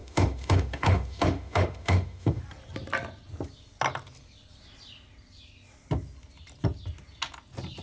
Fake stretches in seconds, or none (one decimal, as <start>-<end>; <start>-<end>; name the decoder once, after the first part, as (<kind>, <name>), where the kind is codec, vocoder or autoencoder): 0.0-2.4 (autoencoder, DAC-VAE)